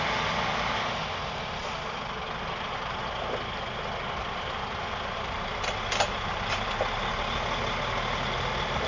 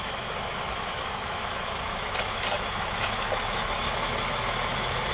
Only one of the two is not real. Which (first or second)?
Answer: second